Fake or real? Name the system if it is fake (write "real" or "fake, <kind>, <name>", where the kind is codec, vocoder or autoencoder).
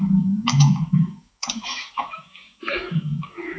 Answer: fake, autoencoder, DAC-VAE